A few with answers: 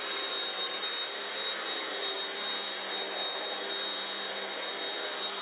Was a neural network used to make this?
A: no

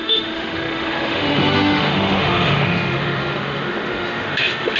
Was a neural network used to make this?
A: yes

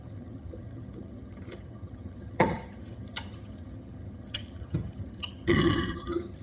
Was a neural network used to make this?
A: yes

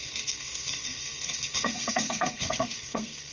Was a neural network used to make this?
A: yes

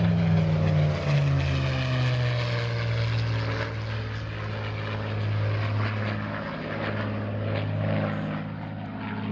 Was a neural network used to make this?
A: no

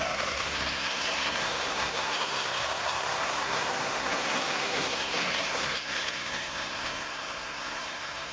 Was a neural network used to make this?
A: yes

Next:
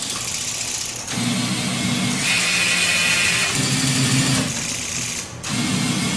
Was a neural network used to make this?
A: no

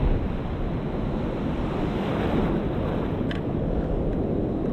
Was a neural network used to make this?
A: no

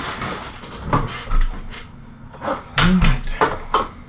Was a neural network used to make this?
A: no